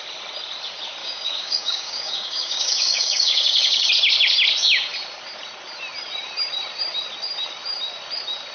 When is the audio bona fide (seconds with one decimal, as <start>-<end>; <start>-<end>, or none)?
0.0-1.0; 3.9-8.5